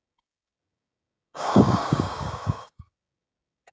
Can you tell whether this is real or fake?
fake